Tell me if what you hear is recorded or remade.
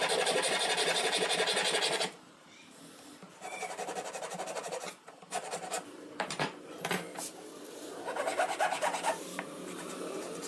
remade